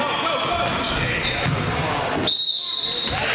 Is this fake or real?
real